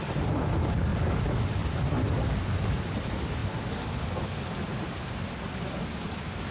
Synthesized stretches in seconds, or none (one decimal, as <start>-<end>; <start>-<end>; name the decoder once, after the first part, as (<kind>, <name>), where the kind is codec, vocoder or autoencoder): none